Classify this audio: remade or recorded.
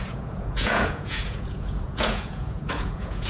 remade